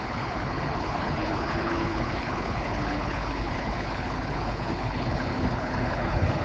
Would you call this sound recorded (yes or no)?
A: no